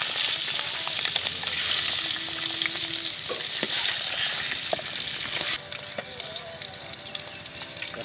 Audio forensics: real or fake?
real